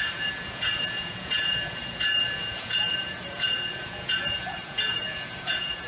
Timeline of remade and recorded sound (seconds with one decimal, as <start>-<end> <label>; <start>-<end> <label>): 0.0-5.9 remade

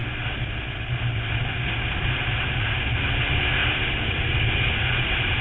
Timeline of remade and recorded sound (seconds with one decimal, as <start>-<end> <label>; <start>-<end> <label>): 0.0-5.4 recorded